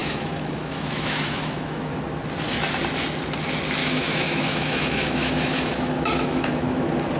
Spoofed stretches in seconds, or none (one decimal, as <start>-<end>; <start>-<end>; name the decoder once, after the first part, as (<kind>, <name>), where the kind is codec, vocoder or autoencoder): 0.0-2.0 (autoencoder, DAC-VAE); 3.8-6.8